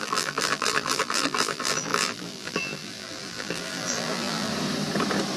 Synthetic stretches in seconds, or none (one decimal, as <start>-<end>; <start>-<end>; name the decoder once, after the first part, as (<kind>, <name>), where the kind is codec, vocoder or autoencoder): 0.0-4.5 (vocoder, BigVGAN v2)